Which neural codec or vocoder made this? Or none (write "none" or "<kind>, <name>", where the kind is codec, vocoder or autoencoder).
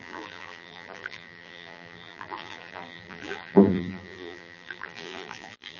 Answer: vocoder, BigVGAN v2